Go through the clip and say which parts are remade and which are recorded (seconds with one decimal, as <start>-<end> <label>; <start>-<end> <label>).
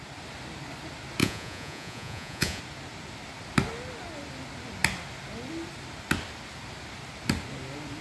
0.0-1.2 recorded; 1.2-2.6 remade; 2.6-8.0 recorded